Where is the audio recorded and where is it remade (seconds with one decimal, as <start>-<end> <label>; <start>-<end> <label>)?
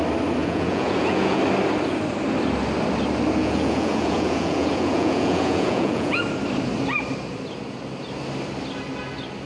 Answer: 0.0-0.4 recorded; 0.4-1.4 remade; 1.4-3.4 recorded; 3.4-6.2 remade; 6.2-9.5 recorded